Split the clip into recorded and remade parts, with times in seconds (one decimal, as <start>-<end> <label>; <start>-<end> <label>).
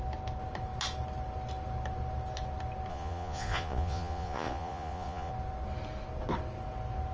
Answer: 0.0-2.9 recorded; 2.9-5.3 remade; 5.3-7.1 recorded